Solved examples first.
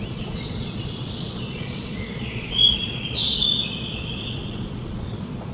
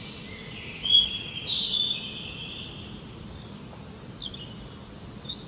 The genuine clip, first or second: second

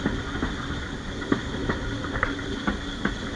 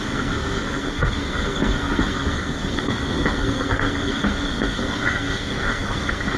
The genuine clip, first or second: first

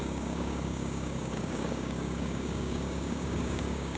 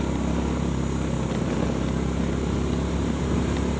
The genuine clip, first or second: second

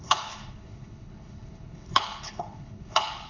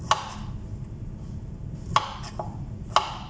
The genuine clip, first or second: second